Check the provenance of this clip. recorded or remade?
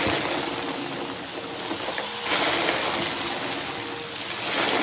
recorded